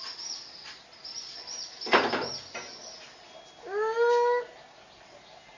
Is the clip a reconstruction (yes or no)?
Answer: no